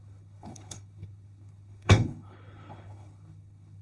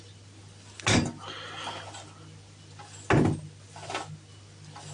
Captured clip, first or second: second